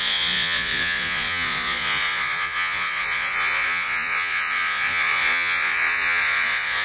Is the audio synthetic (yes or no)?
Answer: yes